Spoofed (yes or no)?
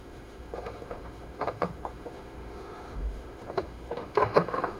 yes